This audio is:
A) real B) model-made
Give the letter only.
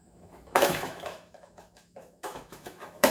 B